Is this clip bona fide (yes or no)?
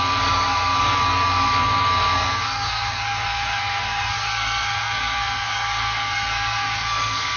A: no